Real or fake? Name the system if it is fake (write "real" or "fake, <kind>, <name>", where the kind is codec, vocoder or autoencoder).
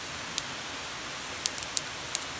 real